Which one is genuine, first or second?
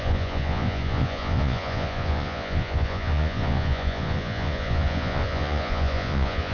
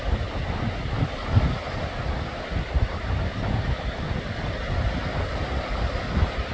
second